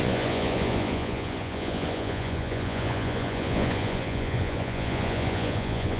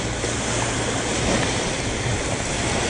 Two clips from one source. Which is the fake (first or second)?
first